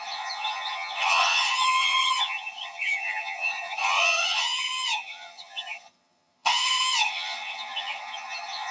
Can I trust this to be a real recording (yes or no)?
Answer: no